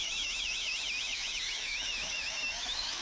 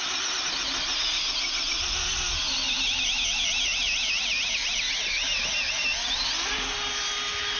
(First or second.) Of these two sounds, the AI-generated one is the first